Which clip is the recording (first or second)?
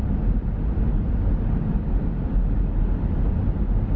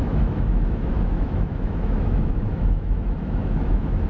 first